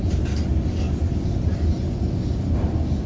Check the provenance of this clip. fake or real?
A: real